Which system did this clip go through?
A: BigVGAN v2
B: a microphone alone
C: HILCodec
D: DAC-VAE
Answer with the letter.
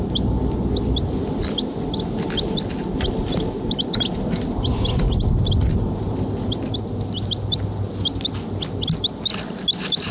B